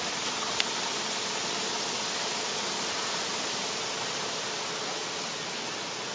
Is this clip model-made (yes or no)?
no